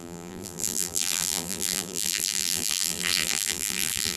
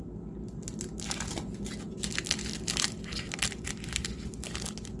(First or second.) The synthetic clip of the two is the first